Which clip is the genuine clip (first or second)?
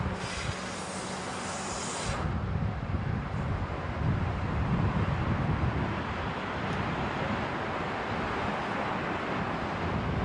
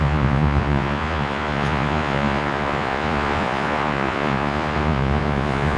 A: first